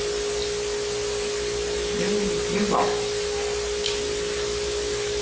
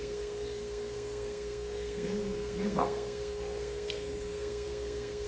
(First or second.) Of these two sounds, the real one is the first